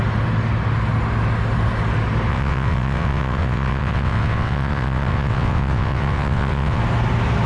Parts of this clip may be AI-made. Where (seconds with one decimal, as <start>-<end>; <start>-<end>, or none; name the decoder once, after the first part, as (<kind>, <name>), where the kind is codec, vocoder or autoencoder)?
2.3-6.8 (vocoder, WaveNeXt)

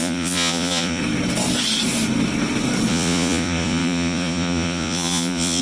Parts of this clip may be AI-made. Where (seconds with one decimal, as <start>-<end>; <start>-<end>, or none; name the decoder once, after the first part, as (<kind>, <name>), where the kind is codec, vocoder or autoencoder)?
0.0-1.0 (vocoder, Vocos); 2.9-5.6